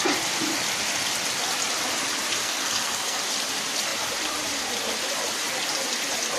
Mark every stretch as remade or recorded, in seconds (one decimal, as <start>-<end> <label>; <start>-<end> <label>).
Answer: 0.0-2.4 recorded; 2.4-3.2 remade; 3.2-6.4 recorded